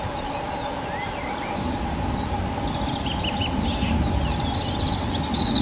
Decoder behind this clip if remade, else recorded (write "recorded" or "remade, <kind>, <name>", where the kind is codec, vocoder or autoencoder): recorded